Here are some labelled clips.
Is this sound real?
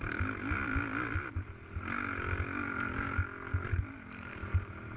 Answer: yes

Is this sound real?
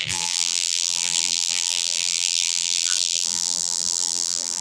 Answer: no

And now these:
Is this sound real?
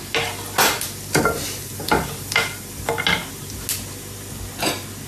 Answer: yes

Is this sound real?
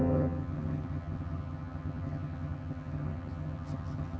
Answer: no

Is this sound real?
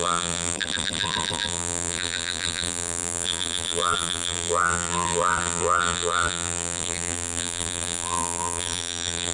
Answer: no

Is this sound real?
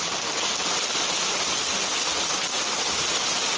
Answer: yes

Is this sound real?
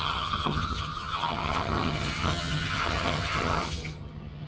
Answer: no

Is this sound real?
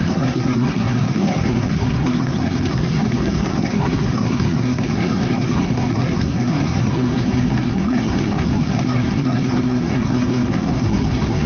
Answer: no